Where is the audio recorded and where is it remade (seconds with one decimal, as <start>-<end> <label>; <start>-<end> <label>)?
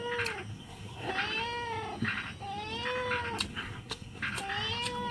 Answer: 0.0-0.5 recorded; 0.5-1.1 remade; 1.1-3.5 recorded; 3.5-4.2 remade; 4.2-5.1 recorded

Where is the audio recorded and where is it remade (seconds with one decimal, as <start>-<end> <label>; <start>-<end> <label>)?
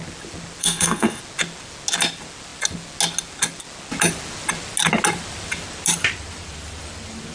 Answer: 0.0-0.6 recorded; 0.6-1.2 remade; 1.2-7.3 recorded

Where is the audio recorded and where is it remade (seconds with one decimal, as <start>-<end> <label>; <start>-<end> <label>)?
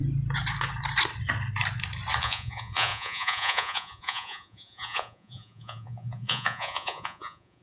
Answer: 0.0-2.2 recorded; 2.2-7.6 remade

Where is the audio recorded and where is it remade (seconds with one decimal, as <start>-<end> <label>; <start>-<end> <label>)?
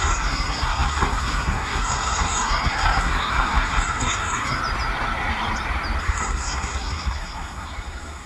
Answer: 0.0-4.6 remade; 4.6-6.0 recorded; 6.0-8.3 remade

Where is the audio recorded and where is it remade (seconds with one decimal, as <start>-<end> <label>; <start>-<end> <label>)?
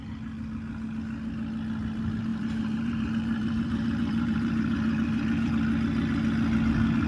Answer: 0.0-2.3 recorded; 2.3-5.5 remade; 5.5-7.1 recorded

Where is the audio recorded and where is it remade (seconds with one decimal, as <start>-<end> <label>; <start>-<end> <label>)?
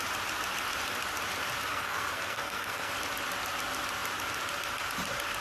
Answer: 0.0-1.7 recorded; 1.7-2.9 remade; 2.9-5.4 recorded